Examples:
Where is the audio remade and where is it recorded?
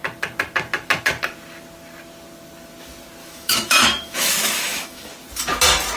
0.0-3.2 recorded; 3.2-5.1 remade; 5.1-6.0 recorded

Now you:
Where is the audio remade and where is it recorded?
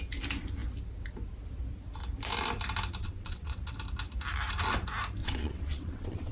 0.0-3.0 recorded; 3.0-3.7 remade; 3.7-5.2 recorded; 5.2-6.3 remade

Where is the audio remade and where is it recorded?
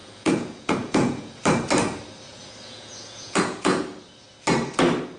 0.0-1.4 remade; 1.4-2.3 recorded; 2.3-3.8 remade; 3.8-5.2 recorded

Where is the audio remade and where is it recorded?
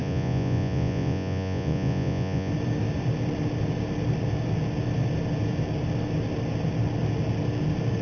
0.0-2.5 remade; 2.5-8.0 recorded